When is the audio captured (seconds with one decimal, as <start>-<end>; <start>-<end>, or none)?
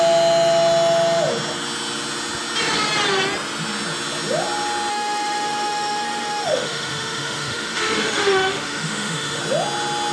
0.0-4.9; 9.4-10.1